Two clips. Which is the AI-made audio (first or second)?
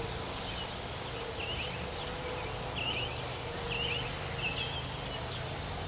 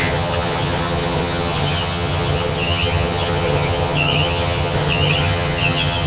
second